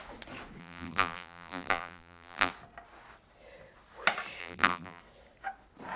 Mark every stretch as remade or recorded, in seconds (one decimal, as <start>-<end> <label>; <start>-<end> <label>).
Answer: 0.0-0.6 recorded; 0.6-2.5 remade; 2.5-4.4 recorded; 4.4-5.0 remade; 5.0-6.0 recorded